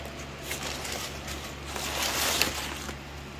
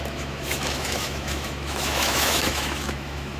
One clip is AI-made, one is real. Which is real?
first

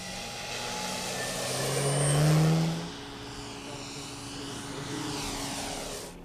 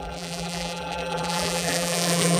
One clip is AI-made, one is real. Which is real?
first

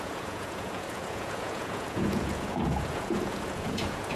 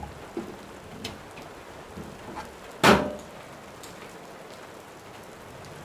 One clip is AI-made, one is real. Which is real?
second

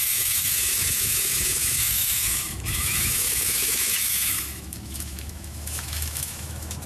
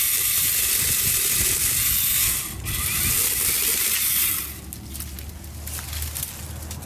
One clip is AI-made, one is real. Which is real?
second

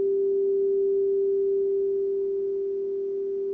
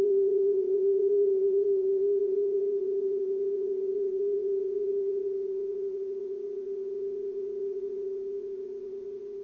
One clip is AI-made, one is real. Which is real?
first